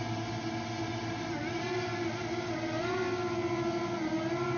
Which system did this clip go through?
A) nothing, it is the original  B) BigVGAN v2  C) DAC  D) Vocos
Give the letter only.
A